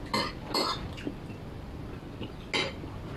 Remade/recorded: recorded